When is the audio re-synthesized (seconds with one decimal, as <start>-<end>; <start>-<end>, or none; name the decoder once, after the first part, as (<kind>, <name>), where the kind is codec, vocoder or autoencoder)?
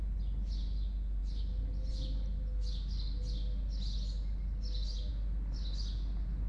none